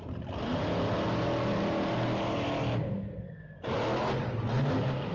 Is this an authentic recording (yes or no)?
yes